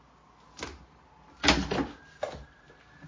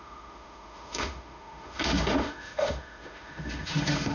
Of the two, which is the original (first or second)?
first